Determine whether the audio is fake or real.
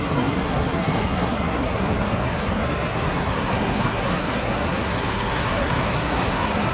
fake